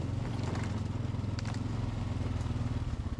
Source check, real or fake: real